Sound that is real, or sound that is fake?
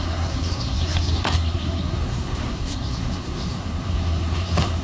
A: fake